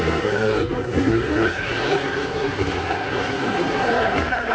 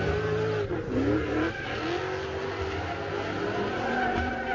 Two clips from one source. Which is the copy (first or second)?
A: first